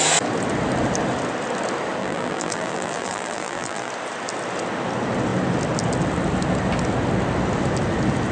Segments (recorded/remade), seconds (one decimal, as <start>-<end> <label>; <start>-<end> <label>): 0.0-2.0 recorded; 2.0-3.9 remade; 3.9-8.3 recorded